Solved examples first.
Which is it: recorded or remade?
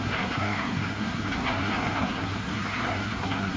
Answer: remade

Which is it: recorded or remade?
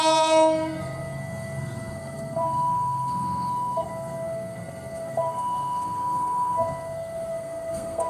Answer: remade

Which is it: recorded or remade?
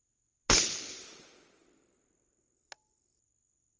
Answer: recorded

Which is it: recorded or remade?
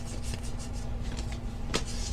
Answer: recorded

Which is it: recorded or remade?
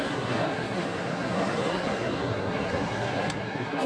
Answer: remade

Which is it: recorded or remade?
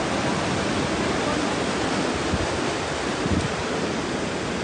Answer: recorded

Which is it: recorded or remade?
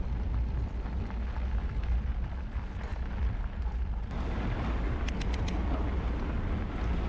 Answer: recorded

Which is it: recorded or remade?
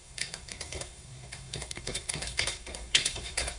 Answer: remade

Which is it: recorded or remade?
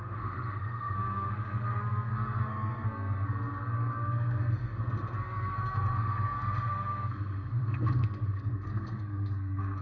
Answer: remade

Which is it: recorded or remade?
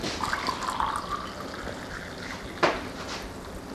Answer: recorded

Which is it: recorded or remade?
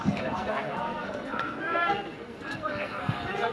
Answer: remade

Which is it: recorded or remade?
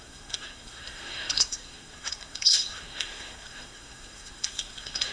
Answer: remade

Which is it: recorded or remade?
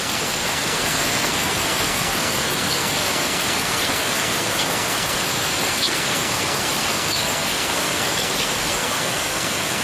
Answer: remade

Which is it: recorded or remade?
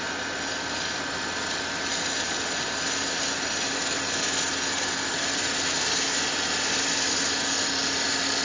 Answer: recorded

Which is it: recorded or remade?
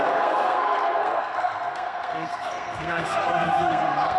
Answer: remade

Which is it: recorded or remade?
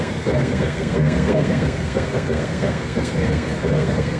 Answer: remade